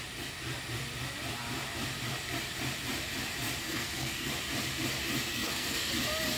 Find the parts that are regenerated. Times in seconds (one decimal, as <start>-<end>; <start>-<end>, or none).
3.6-4.3; 5.3-5.9